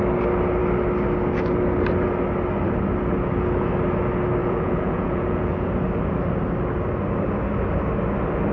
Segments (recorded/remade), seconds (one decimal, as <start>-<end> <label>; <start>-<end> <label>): 0.0-4.4 recorded; 4.4-5.7 remade; 5.7-8.5 recorded